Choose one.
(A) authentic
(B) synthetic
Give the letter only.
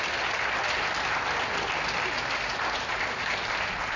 A